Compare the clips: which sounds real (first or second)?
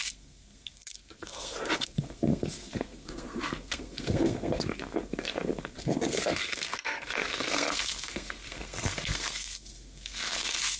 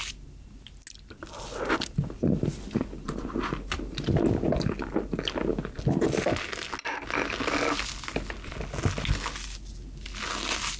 second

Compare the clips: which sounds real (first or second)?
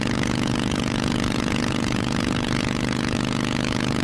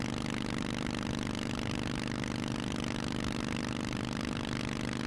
second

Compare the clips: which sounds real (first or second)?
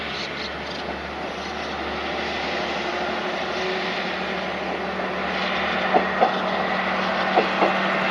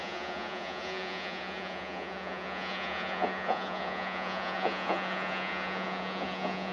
first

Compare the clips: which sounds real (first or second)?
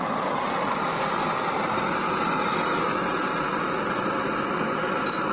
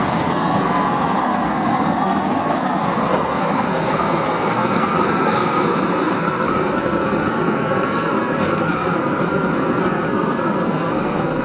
first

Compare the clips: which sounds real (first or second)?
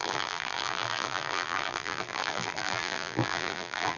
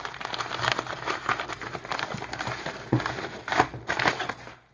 second